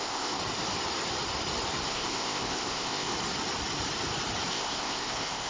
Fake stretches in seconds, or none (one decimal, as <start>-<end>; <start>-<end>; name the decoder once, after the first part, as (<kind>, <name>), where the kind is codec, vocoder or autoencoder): 0.0-0.4 (codec, ZipCodec); 1.9-3.1; 4.5-5.5